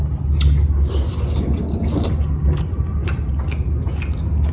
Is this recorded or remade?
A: recorded